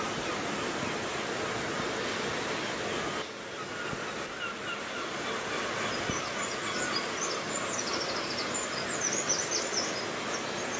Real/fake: real